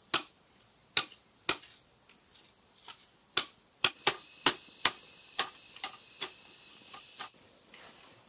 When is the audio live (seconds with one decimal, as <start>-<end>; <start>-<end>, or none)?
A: 0.0-3.8